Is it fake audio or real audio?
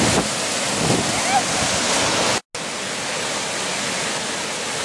real